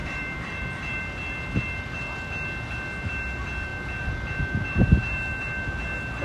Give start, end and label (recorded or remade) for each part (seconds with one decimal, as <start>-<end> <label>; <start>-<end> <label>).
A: 0.0-1.0 remade; 1.0-6.2 recorded